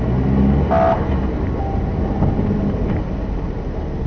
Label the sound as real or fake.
real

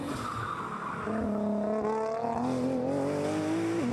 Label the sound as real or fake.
real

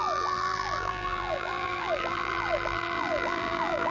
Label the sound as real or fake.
fake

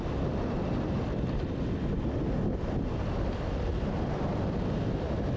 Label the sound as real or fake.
fake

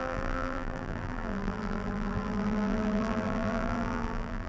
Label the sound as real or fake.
fake